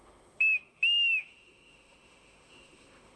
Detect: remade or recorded remade